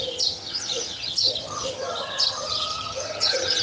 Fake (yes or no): yes